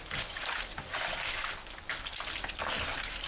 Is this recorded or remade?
recorded